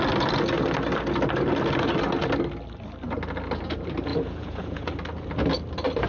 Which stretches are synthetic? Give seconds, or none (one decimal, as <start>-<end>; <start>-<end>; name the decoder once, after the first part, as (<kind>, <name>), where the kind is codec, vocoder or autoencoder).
4.1-4.9 (vocoder, Vocos)